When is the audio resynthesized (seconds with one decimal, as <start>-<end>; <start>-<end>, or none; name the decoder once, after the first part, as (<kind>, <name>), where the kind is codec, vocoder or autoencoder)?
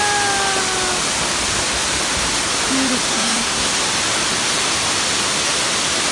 3.1-3.7 (codec, SNAC)